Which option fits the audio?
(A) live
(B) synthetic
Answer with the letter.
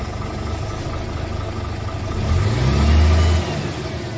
A